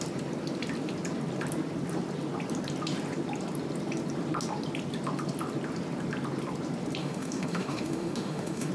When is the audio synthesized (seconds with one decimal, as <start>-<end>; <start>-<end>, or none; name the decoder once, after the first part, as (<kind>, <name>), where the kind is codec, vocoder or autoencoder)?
7.0-8.7 (autoencoder, DAC-VAE)